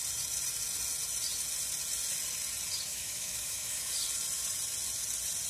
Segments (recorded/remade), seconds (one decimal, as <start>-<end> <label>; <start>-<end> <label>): 0.0-2.9 recorded; 2.9-3.9 remade; 3.9-5.5 recorded